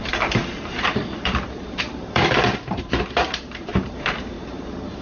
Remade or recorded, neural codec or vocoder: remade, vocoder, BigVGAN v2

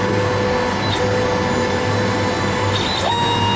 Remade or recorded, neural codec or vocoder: recorded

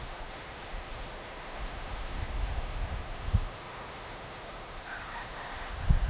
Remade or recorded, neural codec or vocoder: remade, autoencoder, DAC-VAE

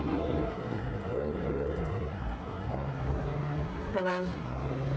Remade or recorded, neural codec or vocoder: remade, codec, SNAC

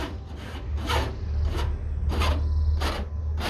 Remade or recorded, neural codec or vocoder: recorded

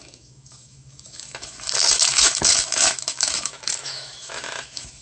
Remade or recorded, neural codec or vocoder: remade, autoencoder, DAC-VAE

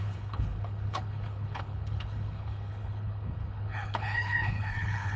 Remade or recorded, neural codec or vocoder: remade, codec, HILCodec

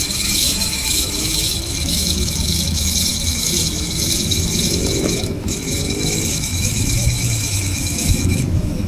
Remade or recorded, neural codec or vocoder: remade, autoencoder, DAC-VAE